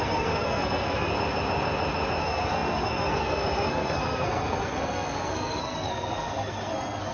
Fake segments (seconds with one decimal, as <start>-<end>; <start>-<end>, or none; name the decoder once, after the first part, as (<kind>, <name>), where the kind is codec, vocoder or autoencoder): 0.0-1.1 (codec, SNAC); 2.2-7.1